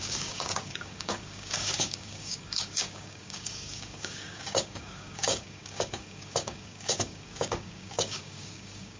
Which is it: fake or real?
fake